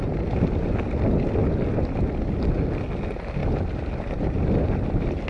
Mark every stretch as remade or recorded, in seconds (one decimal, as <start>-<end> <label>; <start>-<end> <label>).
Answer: 0.0-5.3 recorded